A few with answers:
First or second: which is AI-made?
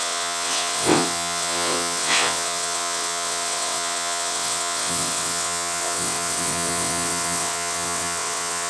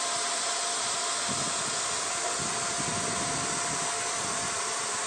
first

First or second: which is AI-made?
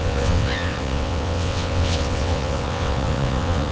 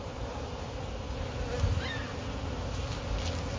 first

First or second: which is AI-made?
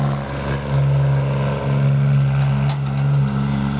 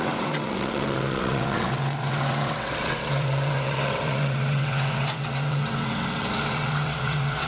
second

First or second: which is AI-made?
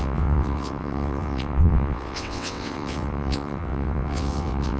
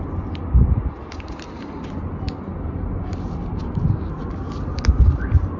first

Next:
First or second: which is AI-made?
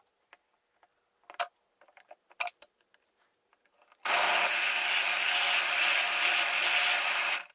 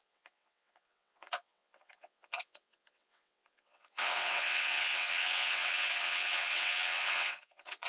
second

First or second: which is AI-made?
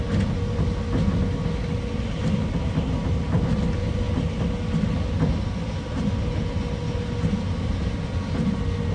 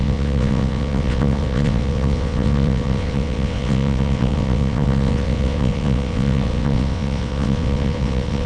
second